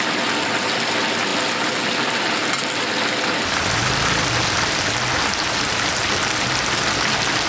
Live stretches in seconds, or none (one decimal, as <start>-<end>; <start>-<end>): 0.0-7.5